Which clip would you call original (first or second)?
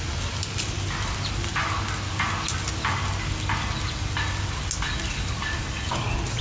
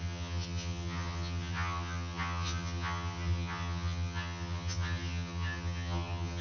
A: first